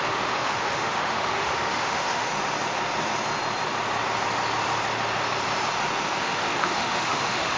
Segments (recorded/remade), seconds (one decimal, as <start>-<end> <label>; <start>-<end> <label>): 0.0-2.3 remade; 2.3-6.2 recorded; 6.2-7.6 remade